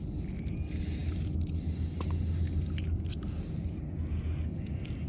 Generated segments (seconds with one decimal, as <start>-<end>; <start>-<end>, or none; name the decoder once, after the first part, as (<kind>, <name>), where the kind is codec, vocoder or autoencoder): none